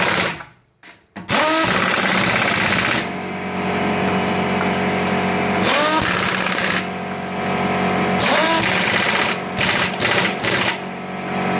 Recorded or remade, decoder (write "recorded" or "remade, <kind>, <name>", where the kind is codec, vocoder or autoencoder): recorded